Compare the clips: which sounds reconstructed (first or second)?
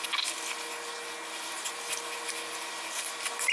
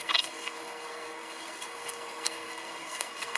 second